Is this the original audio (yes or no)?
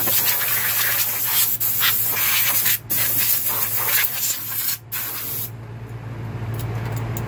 yes